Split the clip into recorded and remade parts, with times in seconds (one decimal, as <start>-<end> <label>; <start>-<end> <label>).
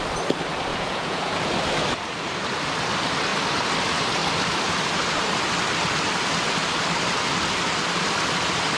0.0-0.7 recorded; 0.7-1.5 remade; 1.5-8.8 recorded